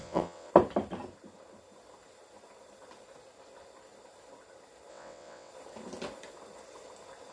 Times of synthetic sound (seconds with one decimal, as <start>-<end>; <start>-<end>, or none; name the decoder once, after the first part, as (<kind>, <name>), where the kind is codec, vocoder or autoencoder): 0.0-0.5 (vocoder, WaveNeXt); 4.9-5.5